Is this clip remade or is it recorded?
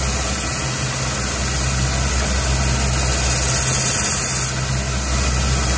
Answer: recorded